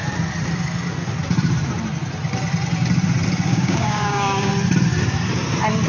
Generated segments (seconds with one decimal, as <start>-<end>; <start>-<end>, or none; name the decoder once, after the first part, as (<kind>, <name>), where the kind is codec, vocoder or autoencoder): 3.5-4.5 (codec, DAC)